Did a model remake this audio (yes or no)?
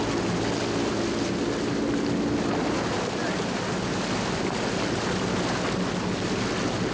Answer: no